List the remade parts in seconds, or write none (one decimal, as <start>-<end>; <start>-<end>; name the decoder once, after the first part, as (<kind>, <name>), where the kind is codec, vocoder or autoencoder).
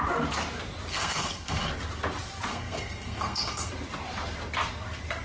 0.9-1.7 (codec, SNAC); 2.5-3.7